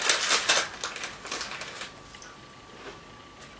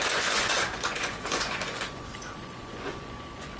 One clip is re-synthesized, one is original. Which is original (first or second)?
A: first